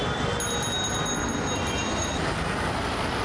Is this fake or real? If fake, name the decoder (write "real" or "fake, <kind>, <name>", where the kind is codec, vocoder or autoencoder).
real